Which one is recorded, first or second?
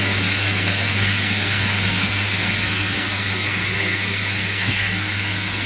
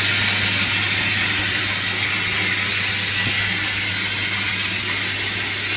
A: second